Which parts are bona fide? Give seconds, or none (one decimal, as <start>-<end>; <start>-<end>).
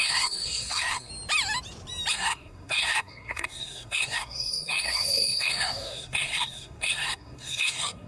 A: 1.1-2.1